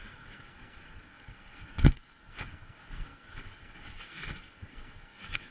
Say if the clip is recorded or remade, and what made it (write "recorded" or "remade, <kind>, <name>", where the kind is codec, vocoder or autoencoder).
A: remade, codec, SNAC